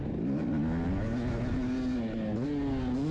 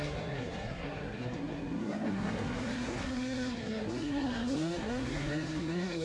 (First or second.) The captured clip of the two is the first